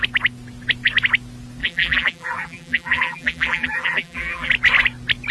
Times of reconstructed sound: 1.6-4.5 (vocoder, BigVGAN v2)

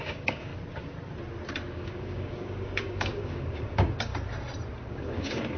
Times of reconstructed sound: 0.0-0.5 (codec, DAC); 1.7-4.1; 4.8-5.6